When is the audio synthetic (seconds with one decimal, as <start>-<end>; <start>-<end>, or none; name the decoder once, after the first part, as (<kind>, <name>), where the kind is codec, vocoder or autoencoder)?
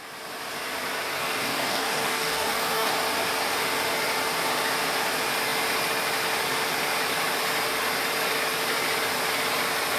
1.2-2.9 (codec, DAC)